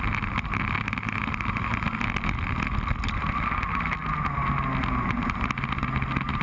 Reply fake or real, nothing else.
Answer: real